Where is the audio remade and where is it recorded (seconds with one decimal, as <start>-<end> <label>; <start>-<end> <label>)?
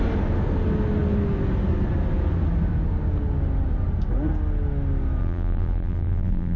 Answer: 0.0-5.2 recorded; 5.2-6.6 remade